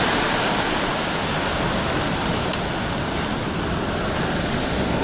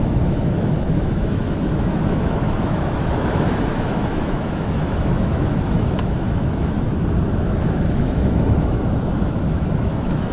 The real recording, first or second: first